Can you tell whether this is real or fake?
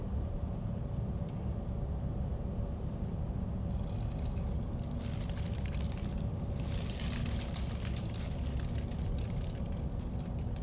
real